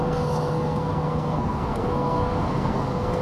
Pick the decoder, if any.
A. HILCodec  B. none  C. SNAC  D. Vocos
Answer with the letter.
C